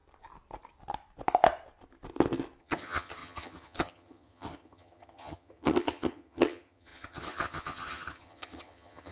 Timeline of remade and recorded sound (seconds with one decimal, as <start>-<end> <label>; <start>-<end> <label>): 0.0-2.6 recorded; 2.6-9.1 remade